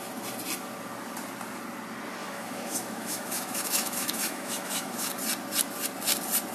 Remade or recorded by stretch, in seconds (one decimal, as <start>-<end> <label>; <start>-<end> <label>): 0.0-2.2 recorded; 2.2-5.1 remade; 5.1-6.5 recorded